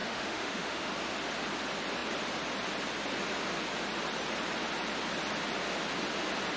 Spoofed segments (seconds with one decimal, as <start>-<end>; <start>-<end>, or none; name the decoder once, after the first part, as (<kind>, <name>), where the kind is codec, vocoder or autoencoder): 0.0-0.9 (autoencoder, DAC-VAE)